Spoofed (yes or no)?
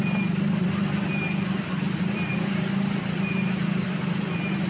no